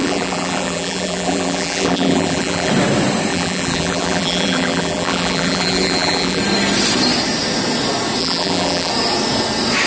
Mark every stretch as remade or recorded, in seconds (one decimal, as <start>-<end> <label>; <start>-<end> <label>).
0.0-2.7 remade; 2.7-3.3 recorded; 3.3-6.4 remade; 6.4-8.2 recorded; 8.2-8.9 remade; 8.9-9.9 recorded